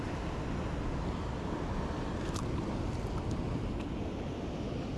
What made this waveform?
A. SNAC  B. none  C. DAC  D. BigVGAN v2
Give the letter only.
B